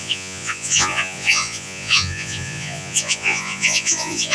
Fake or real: fake